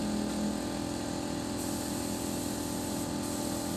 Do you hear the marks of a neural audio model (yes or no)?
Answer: no